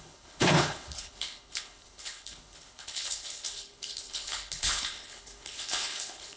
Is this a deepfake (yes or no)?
yes